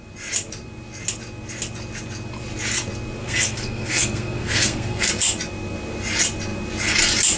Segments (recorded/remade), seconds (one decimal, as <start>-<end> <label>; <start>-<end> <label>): 0.0-3.2 recorded; 3.2-5.1 remade; 5.1-7.4 recorded